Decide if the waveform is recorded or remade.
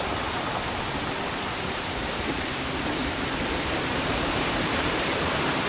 remade